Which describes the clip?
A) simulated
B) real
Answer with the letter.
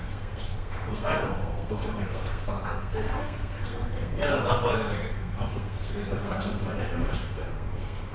A